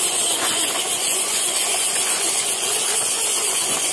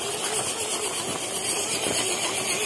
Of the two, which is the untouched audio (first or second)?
second